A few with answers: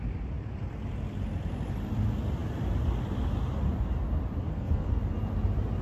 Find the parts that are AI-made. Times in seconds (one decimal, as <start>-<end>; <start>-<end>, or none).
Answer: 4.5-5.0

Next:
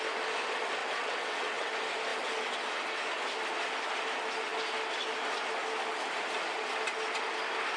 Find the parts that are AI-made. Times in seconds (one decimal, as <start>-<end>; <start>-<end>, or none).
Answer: 0.8-1.7

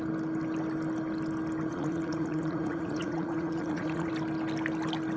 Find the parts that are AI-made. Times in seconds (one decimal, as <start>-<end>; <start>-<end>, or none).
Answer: 1.7-4.1